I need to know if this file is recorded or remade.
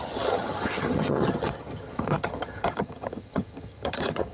remade